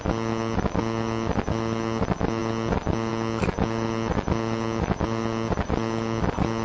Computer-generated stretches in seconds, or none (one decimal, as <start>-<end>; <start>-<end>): none